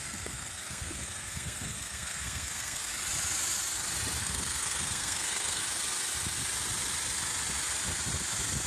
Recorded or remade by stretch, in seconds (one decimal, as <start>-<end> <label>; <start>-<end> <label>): 0.0-2.9 remade; 2.9-4.2 recorded; 4.2-5.6 remade; 5.6-8.7 recorded